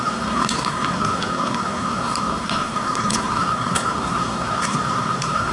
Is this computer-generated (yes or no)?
yes